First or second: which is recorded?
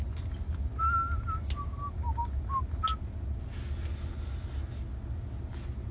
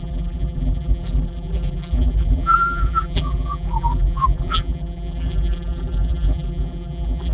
first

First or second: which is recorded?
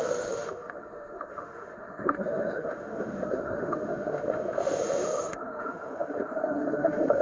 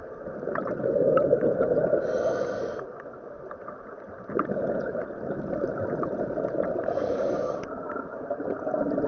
second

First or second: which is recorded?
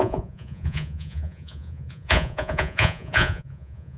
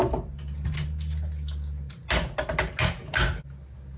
second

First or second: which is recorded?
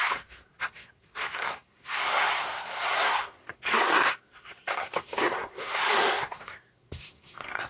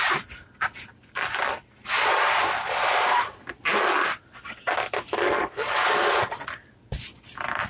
second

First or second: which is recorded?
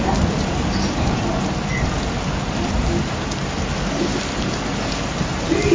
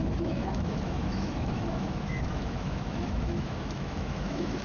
first